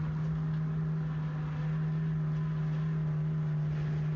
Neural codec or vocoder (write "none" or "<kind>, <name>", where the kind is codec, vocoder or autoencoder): none